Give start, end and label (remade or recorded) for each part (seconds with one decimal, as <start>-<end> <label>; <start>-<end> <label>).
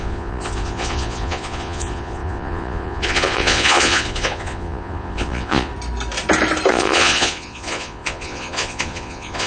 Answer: 0.0-5.7 remade; 5.7-6.7 recorded; 6.7-9.5 remade